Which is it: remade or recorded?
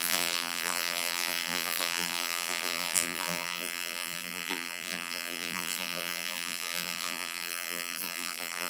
remade